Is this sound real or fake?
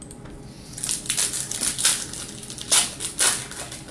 real